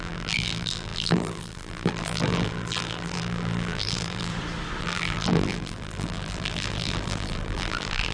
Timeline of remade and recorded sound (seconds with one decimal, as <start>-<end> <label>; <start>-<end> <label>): 0.0-4.3 remade; 4.3-4.8 recorded; 4.8-8.1 remade